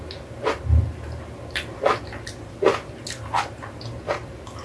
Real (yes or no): yes